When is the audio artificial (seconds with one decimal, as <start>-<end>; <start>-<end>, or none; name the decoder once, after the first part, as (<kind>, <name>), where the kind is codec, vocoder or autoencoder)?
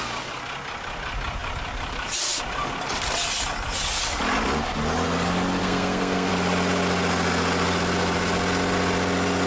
5.6-6.3 (codec, SNAC)